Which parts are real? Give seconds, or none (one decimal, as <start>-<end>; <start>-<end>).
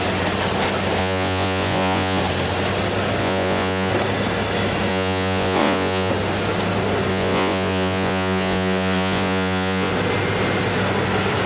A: 0.0-1.0; 2.2-3.2; 3.9-4.9; 6.1-7.1; 9.9-11.5